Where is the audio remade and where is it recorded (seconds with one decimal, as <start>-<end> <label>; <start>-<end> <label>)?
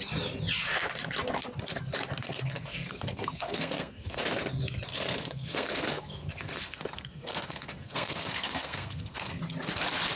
0.0-2.2 recorded; 2.2-4.2 remade; 4.2-4.9 recorded; 4.9-9.4 remade; 9.4-10.2 recorded